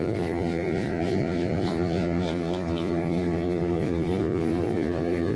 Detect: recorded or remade remade